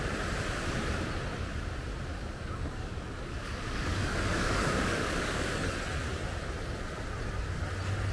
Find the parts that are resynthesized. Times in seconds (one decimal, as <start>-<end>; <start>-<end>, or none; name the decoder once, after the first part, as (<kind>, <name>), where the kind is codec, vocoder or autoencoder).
2.1-5.7 (codec, DAC)